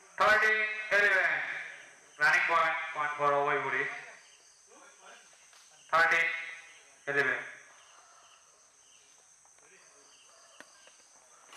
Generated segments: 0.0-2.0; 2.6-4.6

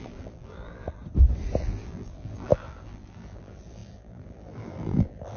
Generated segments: 0.0-1.0; 1.6-5.4

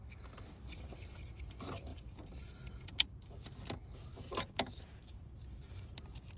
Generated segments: 1.9-2.5; 3.8-6.4